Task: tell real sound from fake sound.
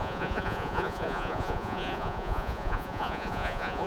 fake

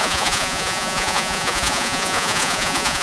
fake